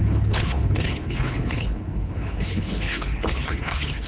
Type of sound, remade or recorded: remade